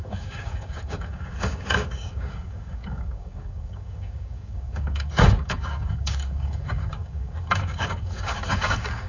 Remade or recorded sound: remade